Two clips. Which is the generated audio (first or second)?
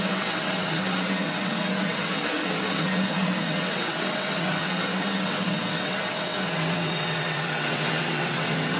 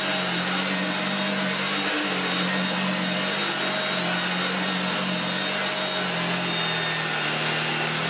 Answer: first